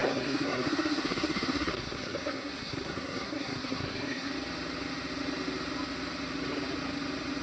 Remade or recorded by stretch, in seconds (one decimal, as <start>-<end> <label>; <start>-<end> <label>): 0.0-4.3 remade; 4.3-7.4 recorded